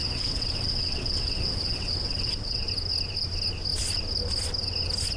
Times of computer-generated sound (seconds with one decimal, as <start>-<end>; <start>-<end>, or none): 0.0-2.7